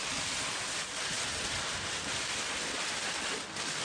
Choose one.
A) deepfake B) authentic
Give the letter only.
B